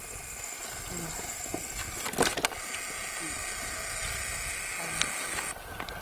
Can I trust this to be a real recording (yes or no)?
yes